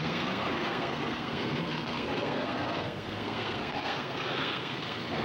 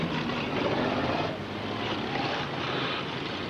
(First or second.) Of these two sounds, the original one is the second